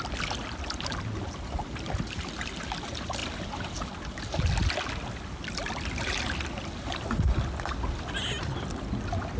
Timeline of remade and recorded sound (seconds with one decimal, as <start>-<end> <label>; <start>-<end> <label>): 0.0-9.4 recorded